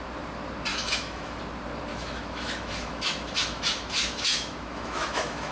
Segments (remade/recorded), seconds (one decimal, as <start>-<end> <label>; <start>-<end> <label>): 0.0-0.7 recorded; 0.7-1.4 remade; 1.4-1.9 recorded; 1.9-5.5 remade